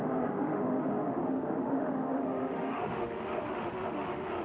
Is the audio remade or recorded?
remade